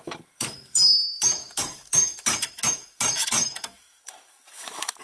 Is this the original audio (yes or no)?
no